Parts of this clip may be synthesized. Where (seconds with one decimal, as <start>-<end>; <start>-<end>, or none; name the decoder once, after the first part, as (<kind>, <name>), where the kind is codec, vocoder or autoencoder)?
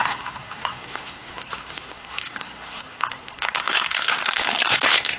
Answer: 0.0-5.2 (codec, SNAC)